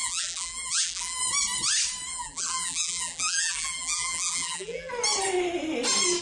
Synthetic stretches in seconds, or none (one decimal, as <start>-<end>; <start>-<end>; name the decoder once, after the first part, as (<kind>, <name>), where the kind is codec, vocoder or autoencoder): 0.0-1.2 (vocoder, BigVGAN v2); 2.1-4.9